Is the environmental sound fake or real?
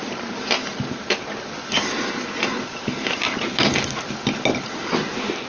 real